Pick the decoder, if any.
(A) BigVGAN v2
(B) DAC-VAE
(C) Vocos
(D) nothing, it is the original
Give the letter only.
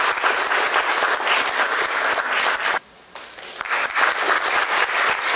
D